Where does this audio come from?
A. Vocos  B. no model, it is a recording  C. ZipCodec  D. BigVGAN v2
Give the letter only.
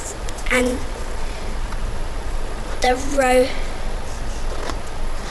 A